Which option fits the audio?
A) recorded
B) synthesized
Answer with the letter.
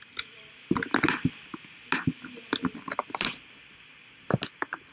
A